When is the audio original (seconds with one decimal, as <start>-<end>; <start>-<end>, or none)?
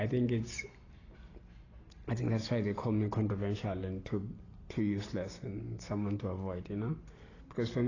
0.0-2.4; 2.9-3.8; 6.6-7.9